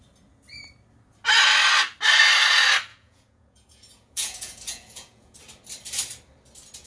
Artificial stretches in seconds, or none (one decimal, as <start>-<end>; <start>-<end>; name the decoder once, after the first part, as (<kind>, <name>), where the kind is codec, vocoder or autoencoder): 2.9-5.4 (vocoder, Vocos)